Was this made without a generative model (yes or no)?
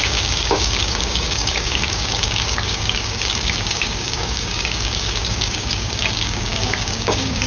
no